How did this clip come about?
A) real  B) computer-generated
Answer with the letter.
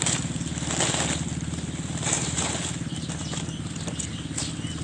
A